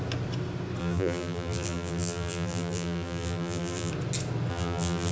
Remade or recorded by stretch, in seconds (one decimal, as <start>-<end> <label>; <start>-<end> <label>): 0.0-0.8 recorded; 0.8-3.9 remade; 3.9-4.5 recorded; 4.5-5.1 remade